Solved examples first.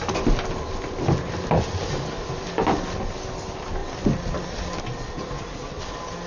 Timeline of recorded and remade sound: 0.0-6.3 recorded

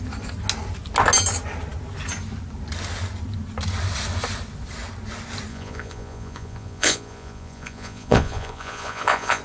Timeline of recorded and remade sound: 0.0-5.5 recorded; 5.5-9.4 remade